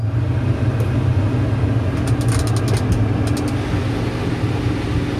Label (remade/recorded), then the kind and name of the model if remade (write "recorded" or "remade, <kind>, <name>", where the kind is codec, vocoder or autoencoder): recorded